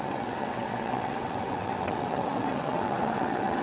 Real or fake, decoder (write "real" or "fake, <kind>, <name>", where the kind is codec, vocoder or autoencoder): fake, vocoder, WaveNeXt